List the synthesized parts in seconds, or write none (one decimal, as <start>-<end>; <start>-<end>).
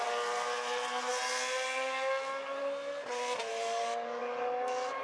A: 3.5-4.2